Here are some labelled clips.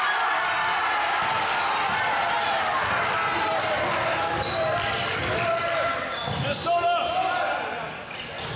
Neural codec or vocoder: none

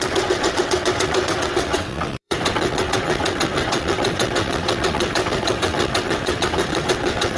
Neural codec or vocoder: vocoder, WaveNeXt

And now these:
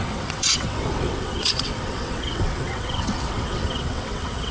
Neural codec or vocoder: vocoder, WaveNeXt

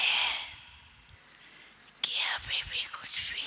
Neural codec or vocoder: none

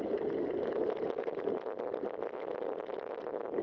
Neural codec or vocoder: none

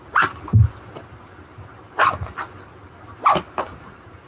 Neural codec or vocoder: none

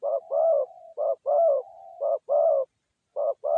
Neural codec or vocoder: none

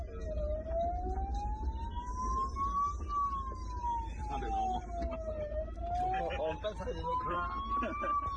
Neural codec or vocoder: none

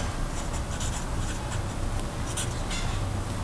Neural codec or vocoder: none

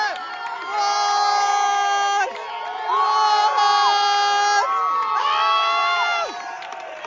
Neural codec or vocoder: none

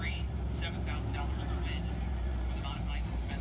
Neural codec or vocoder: none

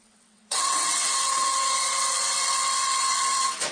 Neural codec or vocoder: vocoder, WaveNeXt